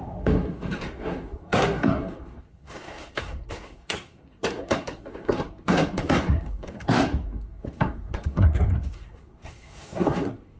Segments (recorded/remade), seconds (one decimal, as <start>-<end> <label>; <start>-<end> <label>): 0.0-10.6 remade